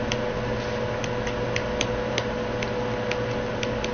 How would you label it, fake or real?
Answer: real